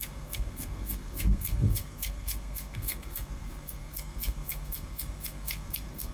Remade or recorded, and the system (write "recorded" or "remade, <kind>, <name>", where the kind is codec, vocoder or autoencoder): remade, codec, SNAC